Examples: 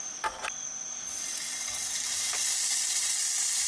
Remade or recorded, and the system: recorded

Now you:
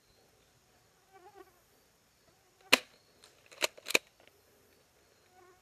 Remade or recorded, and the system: recorded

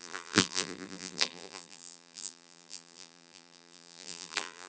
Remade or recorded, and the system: remade, vocoder, BigVGAN v2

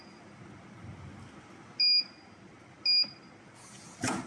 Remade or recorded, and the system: recorded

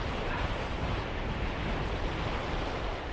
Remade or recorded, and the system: remade, vocoder, BigVGAN v2